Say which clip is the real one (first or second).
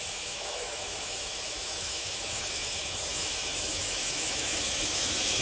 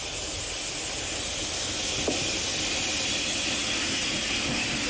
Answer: second